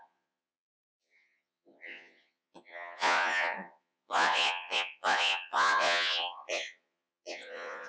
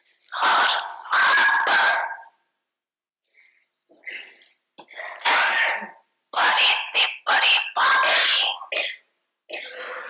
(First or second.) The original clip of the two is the second